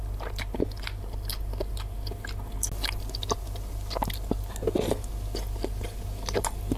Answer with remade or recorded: recorded